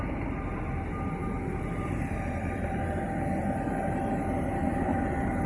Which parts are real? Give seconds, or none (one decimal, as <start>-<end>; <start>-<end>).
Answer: 0.0-1.2; 2.8-4.6

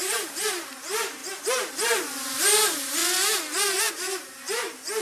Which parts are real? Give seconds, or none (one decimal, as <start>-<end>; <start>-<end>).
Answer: 1.2-1.7; 3.0-3.9

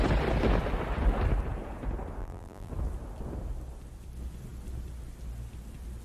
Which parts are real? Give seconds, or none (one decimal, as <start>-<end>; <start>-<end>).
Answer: 0.0-2.2; 2.7-6.0